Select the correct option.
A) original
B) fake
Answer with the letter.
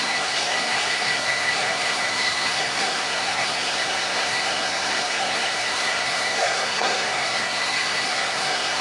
B